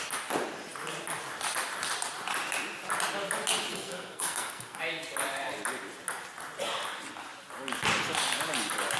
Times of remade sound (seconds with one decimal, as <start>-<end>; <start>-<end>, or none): 3.7-4.8